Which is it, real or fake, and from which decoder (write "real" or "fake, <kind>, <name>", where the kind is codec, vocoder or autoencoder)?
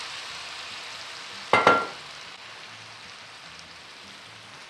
real